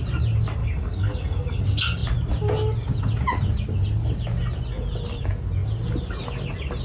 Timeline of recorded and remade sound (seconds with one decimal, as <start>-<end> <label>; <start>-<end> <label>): 0.0-0.6 recorded; 0.6-1.6 remade; 1.6-6.8 recorded